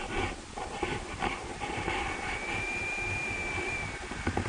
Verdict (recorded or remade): recorded